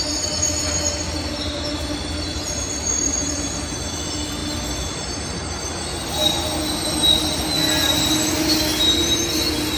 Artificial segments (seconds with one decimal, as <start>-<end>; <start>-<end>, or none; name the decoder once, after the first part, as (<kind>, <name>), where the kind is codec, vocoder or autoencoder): none